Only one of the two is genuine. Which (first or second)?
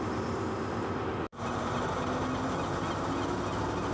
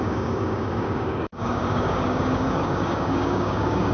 first